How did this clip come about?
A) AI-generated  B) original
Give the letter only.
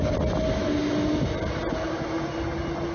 B